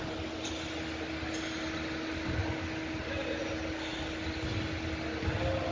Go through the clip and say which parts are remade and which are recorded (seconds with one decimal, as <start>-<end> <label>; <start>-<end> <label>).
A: 0.0-5.7 recorded